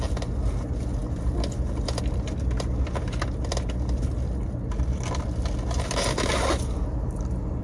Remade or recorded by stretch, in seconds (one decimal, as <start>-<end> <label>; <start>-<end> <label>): 0.0-7.6 recorded